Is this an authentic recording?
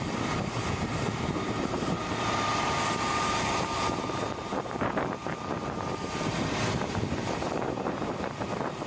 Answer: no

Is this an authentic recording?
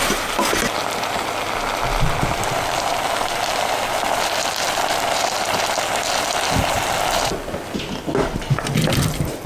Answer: yes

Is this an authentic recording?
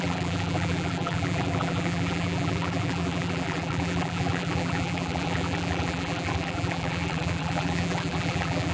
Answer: no